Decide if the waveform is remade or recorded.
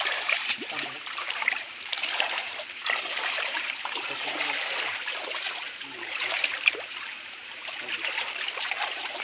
remade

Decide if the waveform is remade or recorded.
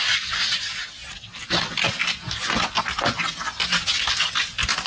recorded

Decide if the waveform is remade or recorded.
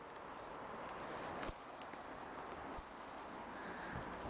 recorded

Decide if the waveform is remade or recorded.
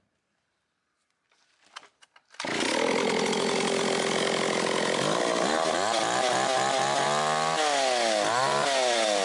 recorded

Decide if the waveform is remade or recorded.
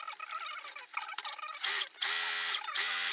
recorded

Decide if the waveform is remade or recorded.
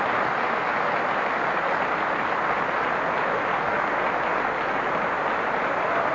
recorded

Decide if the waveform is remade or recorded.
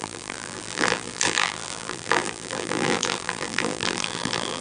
remade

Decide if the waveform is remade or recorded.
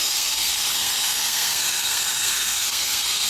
remade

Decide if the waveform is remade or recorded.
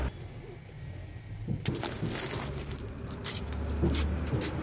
recorded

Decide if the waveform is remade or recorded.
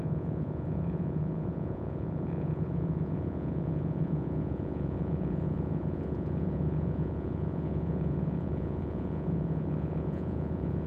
remade